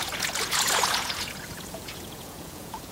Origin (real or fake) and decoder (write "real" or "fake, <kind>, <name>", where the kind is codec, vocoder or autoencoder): fake, vocoder, Vocos